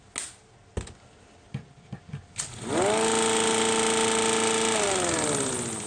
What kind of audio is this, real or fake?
real